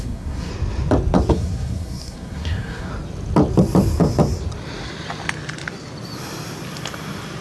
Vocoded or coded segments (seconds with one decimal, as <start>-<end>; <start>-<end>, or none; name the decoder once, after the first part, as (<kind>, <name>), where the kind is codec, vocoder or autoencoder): 0.0-0.5 (codec, SNAC); 1.3-2.9